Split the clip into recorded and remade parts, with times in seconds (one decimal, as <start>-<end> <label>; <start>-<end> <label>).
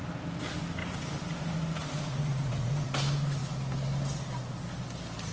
0.0-1.8 recorded; 1.8-2.9 remade; 2.9-5.3 recorded